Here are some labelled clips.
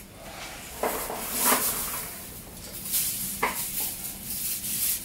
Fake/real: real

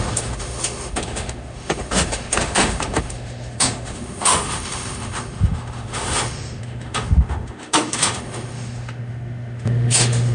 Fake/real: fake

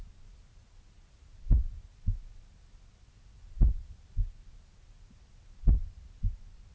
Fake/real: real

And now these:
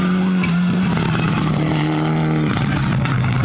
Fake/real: real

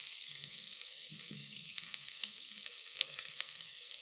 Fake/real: fake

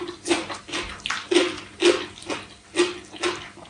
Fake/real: real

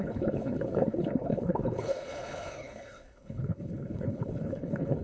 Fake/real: fake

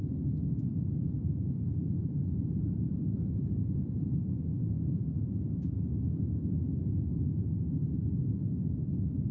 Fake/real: real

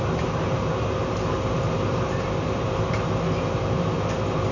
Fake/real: real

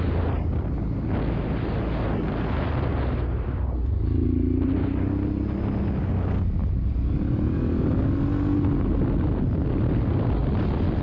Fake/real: real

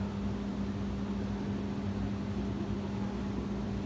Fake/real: real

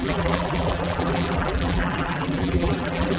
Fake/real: fake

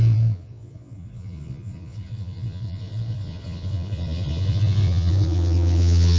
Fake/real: fake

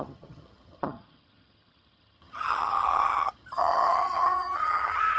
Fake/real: fake